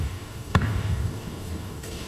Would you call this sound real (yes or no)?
no